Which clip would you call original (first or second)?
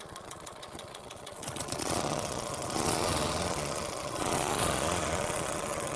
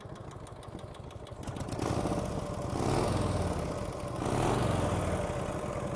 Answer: second